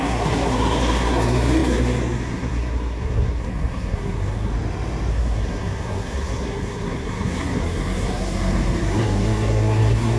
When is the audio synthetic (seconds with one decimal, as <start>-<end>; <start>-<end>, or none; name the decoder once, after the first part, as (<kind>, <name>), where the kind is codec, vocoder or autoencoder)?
0.0-4.5 (codec, SNAC); 5.1-10.2